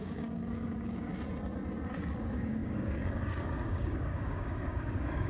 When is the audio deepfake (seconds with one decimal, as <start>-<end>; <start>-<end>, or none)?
0.0-1.1; 1.9-5.3